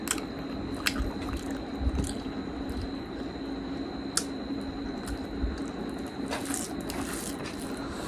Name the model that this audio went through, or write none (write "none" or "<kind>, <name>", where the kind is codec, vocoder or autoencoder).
none